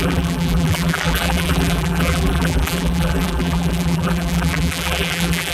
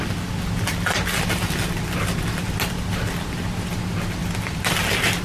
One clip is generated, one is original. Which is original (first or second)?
second